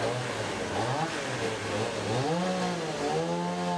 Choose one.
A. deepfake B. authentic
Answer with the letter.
B